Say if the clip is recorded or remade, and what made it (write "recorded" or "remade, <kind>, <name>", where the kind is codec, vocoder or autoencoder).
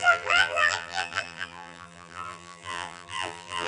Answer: remade, vocoder, BigVGAN v2